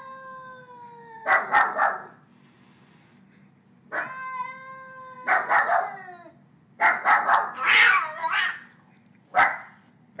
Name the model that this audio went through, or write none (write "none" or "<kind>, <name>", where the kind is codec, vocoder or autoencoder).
none